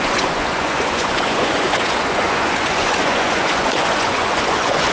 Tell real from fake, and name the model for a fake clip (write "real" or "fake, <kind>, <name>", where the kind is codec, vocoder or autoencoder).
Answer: fake, vocoder, Vocos